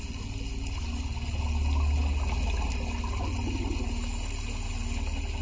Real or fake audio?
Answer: real